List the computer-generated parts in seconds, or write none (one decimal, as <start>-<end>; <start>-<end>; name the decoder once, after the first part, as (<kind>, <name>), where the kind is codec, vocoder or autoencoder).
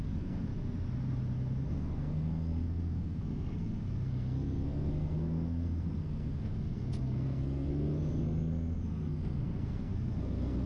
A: 0.0-0.5 (codec, SNAC); 1.7-10.7